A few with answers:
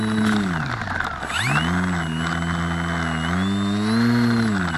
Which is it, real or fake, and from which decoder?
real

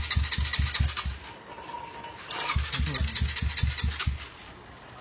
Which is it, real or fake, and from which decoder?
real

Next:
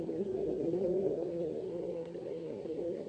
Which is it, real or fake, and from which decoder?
fake, codec, SNAC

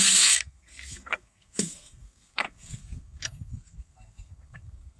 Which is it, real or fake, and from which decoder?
fake, codec, SNAC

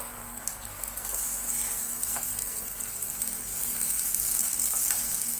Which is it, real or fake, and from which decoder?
fake, codec, SNAC